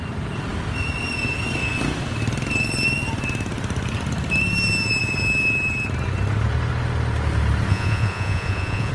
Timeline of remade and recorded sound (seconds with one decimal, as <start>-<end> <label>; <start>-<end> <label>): 0.0-7.7 recorded; 7.7-8.9 remade